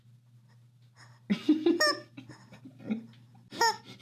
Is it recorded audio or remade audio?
recorded